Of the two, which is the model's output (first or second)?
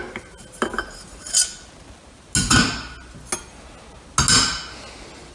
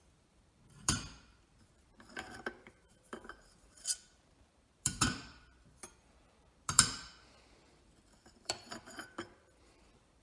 second